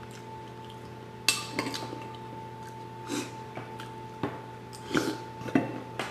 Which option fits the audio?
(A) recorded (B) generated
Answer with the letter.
A